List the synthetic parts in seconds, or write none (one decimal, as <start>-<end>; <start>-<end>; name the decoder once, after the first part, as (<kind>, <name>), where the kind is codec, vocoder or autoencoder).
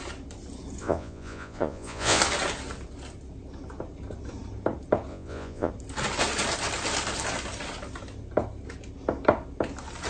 0.8-2.2 (vocoder, Vocos); 5.1-5.7